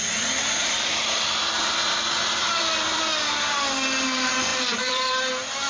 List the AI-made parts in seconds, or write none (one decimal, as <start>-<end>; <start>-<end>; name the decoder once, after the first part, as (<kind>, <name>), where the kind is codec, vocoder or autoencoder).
0.6-3.0 (vocoder, BigVGAN v2); 4.5-5.1